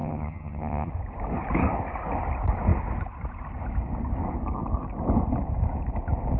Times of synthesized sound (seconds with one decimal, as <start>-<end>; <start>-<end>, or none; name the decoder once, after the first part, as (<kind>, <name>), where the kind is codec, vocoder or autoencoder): 0.0-0.9 (vocoder, HiFi-GAN)